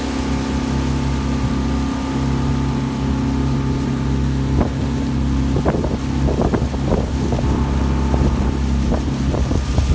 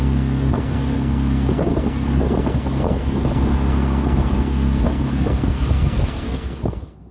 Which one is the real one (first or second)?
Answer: first